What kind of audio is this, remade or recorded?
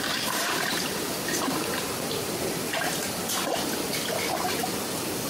recorded